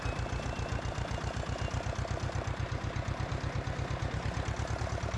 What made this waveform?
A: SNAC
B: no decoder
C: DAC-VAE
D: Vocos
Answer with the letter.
B